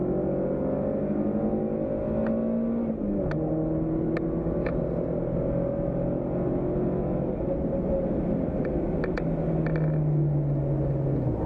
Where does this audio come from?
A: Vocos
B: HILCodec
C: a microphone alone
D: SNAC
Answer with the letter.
C